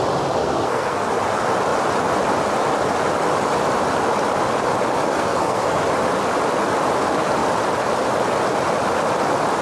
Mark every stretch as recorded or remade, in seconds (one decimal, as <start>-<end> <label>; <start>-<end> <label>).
0.0-0.4 recorded; 0.4-1.1 remade; 1.1-5.1 recorded; 5.1-5.8 remade; 5.8-9.6 recorded